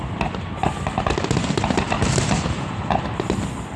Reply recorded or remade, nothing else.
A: recorded